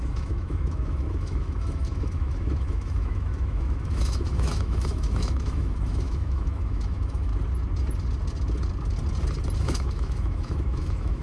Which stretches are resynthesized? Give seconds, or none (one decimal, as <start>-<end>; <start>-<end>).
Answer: 0.0-7.3; 9.6-11.2